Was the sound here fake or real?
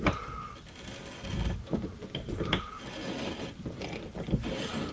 real